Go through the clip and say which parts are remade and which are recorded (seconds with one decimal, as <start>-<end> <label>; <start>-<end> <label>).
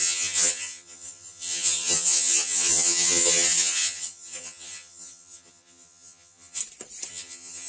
0.0-6.6 remade; 6.6-7.1 recorded; 7.1-7.7 remade